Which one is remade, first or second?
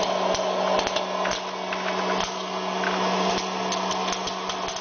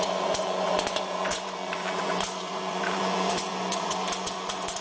second